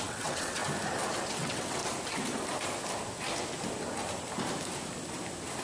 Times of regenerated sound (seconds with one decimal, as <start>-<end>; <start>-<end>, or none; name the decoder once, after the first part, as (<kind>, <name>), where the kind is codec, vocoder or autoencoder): 0.0-0.6 (vocoder, WaveNeXt); 1.3-1.8